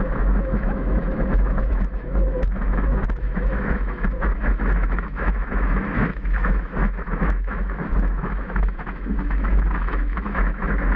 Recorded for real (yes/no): no